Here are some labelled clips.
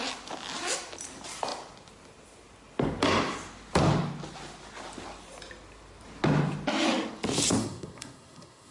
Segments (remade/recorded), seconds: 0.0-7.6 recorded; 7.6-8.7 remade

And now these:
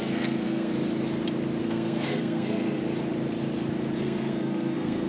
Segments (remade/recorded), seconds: 0.0-0.7 remade; 0.7-1.6 recorded; 1.6-2.8 remade; 2.8-4.0 recorded; 4.0-5.1 remade

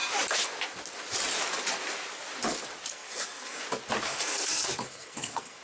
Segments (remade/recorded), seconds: 0.0-2.9 recorded; 2.9-3.6 remade; 3.6-4.1 recorded; 4.1-5.6 remade

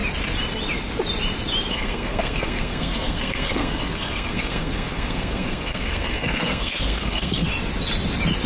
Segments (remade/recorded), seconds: 0.0-1.7 recorded; 1.7-7.5 remade; 7.5-8.5 recorded